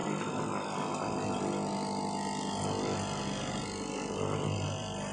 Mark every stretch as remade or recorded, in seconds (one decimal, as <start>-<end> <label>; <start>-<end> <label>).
0.0-5.1 recorded